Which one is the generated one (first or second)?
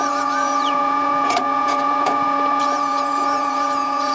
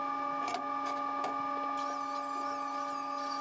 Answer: first